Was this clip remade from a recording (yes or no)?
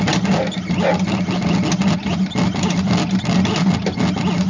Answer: no